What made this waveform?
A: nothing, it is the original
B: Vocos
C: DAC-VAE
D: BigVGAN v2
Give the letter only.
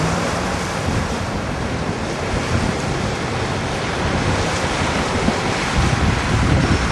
D